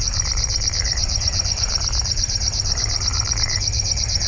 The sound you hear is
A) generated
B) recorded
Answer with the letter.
A